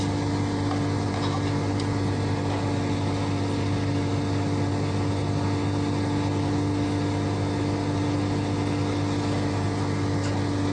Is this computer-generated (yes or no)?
no